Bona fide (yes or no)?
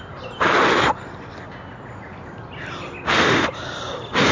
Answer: yes